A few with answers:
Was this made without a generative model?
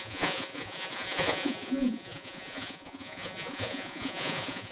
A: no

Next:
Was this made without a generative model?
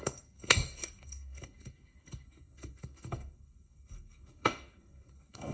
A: no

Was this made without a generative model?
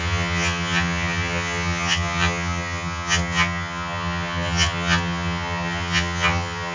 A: no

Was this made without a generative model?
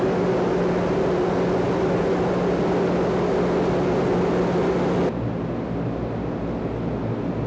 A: yes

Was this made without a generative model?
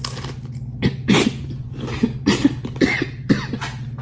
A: yes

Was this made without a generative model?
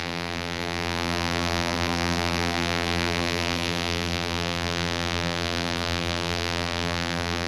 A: no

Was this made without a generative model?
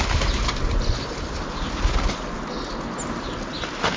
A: yes